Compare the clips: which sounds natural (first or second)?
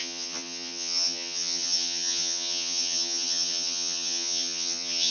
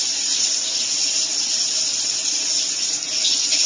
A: second